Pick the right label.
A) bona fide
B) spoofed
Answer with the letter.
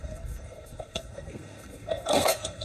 B